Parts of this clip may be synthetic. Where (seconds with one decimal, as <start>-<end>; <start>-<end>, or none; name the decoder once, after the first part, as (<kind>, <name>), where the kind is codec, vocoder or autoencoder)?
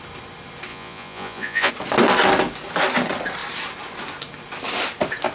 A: 0.7-1.7 (vocoder, Vocos)